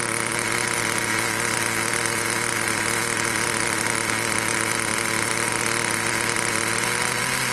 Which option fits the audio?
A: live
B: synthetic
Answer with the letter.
B